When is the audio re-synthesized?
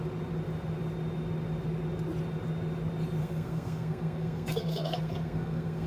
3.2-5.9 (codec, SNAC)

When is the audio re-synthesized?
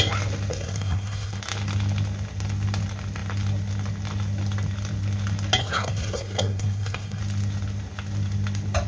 0.5-1.4 (codec, SNAC); 5.6-7.2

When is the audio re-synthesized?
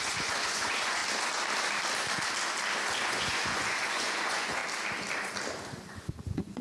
0.0-1.0 (vocoder, Vocos); 3.0-4.6; 5.9-6.6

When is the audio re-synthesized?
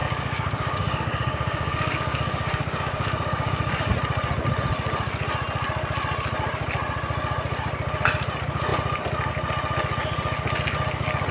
0.0-3.9 (codec, DAC)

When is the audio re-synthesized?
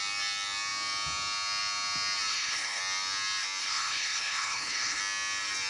2.3-2.8 (codec, HILCodec); 3.6-5.0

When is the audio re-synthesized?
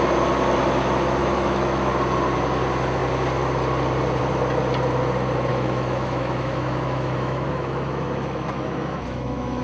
1.2-1.9 (autoencoder, DAC-VAE); 5.5-9.6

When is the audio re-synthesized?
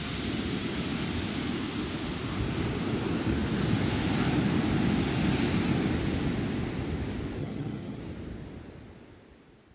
7.4-8.0 (vocoder, HiFi-GAN)